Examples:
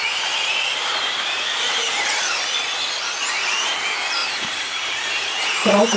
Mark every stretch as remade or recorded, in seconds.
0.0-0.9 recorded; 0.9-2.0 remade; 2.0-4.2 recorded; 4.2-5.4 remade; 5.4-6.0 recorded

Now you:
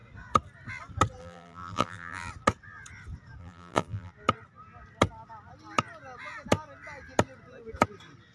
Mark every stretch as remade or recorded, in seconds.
0.0-1.2 recorded; 1.2-2.3 remade; 2.3-3.4 recorded; 3.4-4.1 remade; 4.1-8.3 recorded

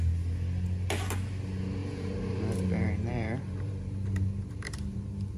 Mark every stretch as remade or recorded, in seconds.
0.0-1.8 recorded; 1.8-5.0 remade; 5.0-5.4 recorded

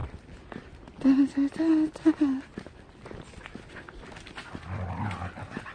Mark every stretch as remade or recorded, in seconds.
0.0-5.7 recorded

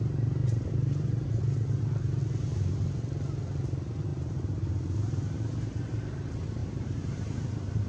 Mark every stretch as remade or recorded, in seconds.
0.0-0.4 recorded; 0.4-1.4 remade; 1.4-4.1 recorded; 4.1-6.0 remade; 6.0-6.6 recorded; 6.6-7.9 remade

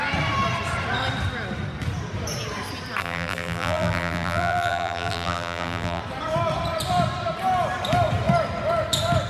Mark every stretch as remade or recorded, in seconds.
0.0-3.0 recorded; 3.0-6.0 remade; 6.0-9.3 recorded

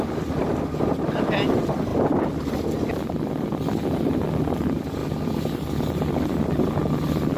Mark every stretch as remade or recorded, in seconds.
0.0-5.0 recorded; 5.0-6.5 remade; 6.5-7.4 recorded

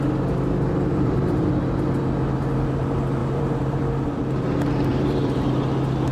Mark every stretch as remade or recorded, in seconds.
0.0-0.9 recorded; 0.9-1.5 remade; 1.5-3.2 recorded; 3.2-3.8 remade; 3.8-4.9 recorded; 4.9-5.6 remade; 5.6-6.1 recorded